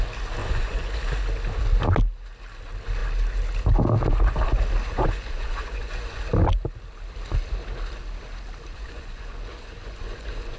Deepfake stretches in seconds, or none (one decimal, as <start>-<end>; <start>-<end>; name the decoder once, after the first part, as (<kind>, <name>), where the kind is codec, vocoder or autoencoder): 0.4-1.0 (vocoder, Vocos); 4.9-6.2; 8.7-10.6